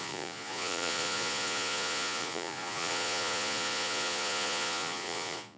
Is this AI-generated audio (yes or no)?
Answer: yes